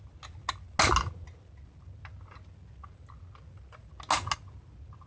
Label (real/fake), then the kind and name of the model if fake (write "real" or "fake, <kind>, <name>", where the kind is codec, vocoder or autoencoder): real